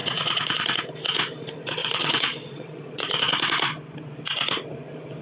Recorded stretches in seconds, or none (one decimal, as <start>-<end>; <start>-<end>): 0.8-1.8; 3.2-5.2